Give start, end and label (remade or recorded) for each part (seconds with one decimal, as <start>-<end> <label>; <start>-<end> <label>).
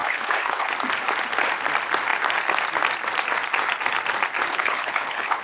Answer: 0.0-0.7 remade; 0.7-4.5 recorded; 4.5-5.4 remade